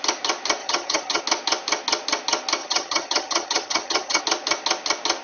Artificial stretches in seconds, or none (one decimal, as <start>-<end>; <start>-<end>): 0.6-1.2; 2.6-4.2